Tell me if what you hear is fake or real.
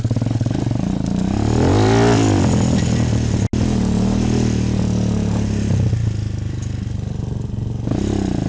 real